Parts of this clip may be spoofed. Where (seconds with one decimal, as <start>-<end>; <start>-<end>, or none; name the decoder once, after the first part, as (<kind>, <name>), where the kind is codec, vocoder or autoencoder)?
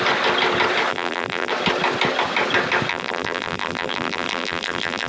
0.9-1.5 (vocoder, BigVGAN v2); 2.9-5.1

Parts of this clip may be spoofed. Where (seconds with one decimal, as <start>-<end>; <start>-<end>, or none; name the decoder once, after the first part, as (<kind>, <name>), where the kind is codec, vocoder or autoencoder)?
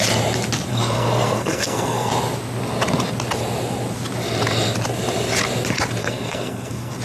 0.7-2.1 (codec, SNAC); 6.0-7.0